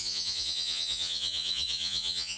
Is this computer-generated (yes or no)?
yes